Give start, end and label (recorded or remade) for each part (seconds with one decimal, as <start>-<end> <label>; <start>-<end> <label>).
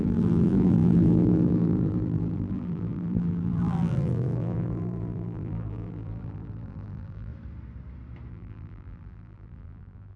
0.0-7.3 remade; 7.3-8.3 recorded; 8.3-10.2 remade